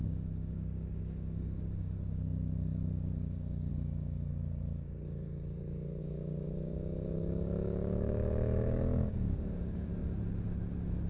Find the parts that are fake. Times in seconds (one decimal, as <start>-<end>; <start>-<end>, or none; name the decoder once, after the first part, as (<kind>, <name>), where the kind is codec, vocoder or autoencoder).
0.0-9.9 (codec, DAC)